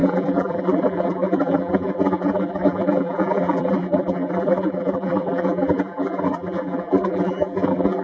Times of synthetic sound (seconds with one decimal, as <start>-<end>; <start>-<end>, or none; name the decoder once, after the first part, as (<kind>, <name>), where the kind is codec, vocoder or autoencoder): 0.0-8.0 (vocoder, BigVGAN v2)